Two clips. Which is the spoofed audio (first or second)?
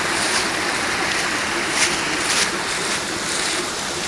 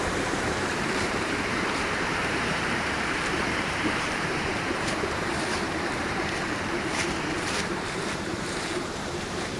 second